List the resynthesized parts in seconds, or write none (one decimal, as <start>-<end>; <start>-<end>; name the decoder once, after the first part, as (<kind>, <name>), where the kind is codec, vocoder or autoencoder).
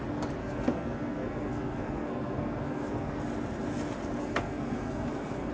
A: 0.4-3.1 (codec, SNAC); 4.2-5.5